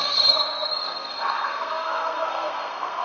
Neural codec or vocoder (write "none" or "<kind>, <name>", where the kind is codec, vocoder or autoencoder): codec, SNAC